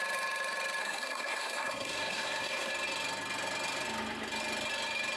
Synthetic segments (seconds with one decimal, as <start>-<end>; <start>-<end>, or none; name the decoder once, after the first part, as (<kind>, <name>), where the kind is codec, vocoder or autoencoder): 0.8-2.7 (codec, SNAC)